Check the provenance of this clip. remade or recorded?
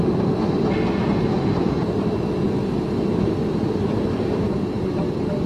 recorded